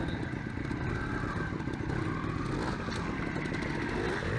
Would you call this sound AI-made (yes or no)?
no